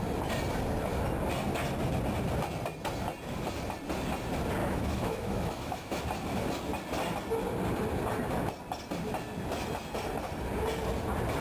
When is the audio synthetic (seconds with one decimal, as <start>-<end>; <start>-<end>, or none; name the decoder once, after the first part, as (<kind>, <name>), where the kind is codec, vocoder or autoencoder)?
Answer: 4.6-6.0 (autoencoder, DAC-VAE)